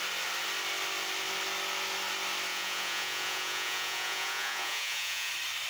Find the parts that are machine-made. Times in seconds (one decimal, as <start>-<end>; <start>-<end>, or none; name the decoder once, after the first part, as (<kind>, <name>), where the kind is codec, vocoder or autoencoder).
2.5-5.3 (vocoder, Vocos)